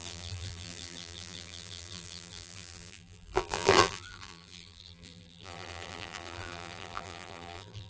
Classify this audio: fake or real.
fake